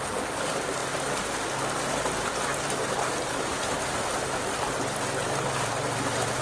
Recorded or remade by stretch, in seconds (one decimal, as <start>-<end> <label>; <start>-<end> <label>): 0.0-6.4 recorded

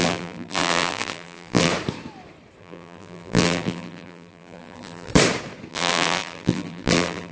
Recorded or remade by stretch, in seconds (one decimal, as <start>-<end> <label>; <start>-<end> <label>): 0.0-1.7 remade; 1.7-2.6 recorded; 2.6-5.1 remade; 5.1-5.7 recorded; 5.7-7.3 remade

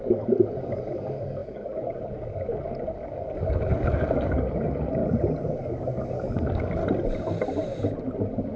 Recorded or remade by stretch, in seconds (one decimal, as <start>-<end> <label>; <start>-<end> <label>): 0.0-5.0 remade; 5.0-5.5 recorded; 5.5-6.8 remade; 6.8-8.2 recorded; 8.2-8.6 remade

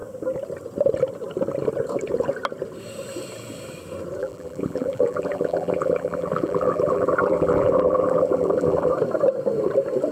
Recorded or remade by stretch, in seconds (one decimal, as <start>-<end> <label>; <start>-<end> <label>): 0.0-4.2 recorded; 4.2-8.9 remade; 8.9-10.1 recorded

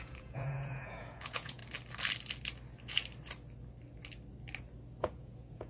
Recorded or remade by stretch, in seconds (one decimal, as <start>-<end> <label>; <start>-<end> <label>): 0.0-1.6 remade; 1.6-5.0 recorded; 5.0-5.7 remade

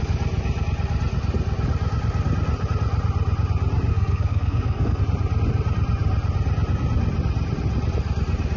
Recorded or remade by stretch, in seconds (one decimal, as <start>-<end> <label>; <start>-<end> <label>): 0.0-3.9 recorded; 3.9-5.0 remade; 5.0-8.6 recorded

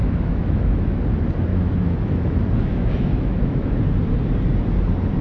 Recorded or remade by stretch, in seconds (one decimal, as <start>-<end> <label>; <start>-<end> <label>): 0.0-1.0 remade; 1.0-1.5 recorded; 1.5-3.7 remade; 3.7-5.2 recorded

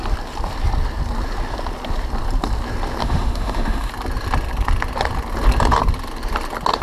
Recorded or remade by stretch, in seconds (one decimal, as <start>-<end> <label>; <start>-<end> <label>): 0.0-3.0 recorded; 3.0-3.9 remade; 3.9-6.8 recorded